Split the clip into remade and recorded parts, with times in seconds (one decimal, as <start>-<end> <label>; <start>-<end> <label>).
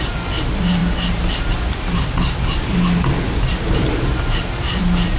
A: 0.0-0.8 recorded; 0.8-3.9 remade; 3.9-5.2 recorded